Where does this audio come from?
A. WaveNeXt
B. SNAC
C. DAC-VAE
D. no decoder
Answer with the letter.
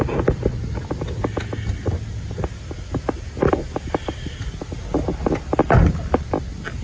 D